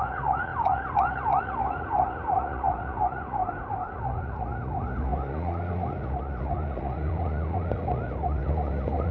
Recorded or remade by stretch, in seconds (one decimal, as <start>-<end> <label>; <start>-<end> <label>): 0.0-3.4 remade; 3.4-3.9 recorded; 3.9-9.1 remade